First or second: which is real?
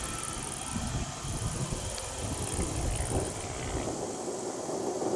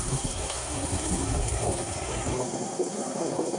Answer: first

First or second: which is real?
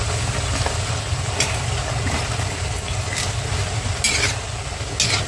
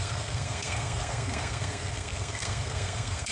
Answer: first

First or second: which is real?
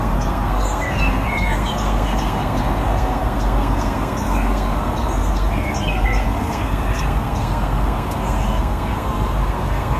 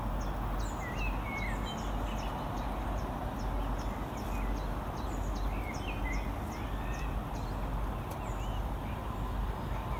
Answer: second